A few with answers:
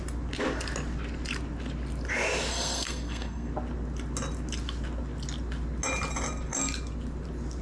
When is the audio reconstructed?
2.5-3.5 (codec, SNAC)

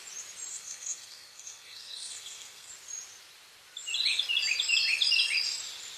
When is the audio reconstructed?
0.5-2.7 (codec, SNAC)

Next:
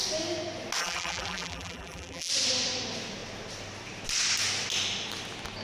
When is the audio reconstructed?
0.8-2.3 (vocoder, BigVGAN v2)

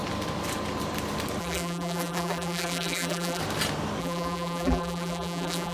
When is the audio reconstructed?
1.4-3.4 (vocoder, BigVGAN v2); 4.0-5.7